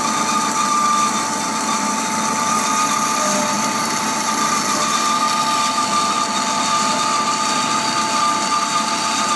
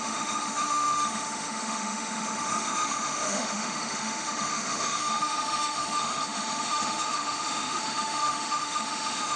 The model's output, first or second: second